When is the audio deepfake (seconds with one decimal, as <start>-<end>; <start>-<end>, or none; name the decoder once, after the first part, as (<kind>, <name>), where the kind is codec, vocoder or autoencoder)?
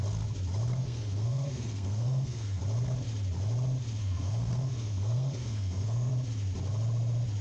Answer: 0.8-2.6 (codec, SNAC); 4.0-6.1